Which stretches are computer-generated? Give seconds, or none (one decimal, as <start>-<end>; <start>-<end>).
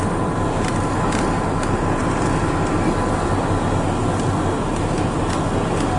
none